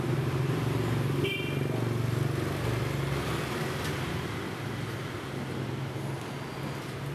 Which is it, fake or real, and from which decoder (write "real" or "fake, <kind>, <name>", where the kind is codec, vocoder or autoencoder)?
real